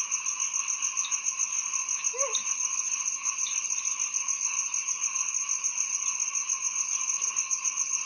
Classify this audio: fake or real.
real